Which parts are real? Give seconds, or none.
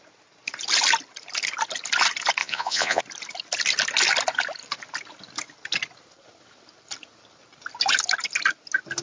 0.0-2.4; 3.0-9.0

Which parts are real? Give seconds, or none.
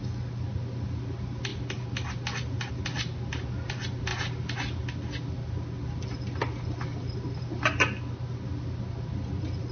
0.0-9.7